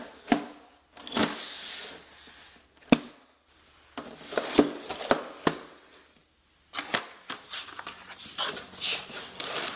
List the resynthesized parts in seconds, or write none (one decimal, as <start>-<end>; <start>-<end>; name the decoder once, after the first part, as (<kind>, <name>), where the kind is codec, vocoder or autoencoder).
none